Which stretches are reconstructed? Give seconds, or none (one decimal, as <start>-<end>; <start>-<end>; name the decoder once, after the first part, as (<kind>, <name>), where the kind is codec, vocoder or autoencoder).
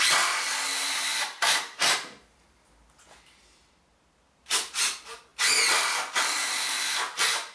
none